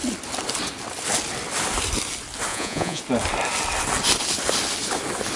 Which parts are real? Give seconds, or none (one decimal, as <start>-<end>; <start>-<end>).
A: 0.0-2.5; 3.0-5.4